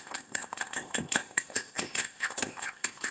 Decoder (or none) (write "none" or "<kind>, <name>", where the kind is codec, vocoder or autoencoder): codec, ZipCodec